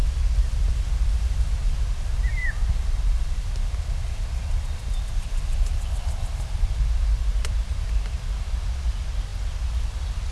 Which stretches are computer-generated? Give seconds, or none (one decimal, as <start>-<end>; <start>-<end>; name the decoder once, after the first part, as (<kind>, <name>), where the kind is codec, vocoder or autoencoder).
2.4-3.4 (vocoder, BigVGAN v2); 4.4-7.8